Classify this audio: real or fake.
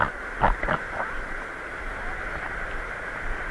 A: real